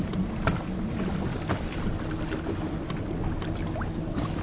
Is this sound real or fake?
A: real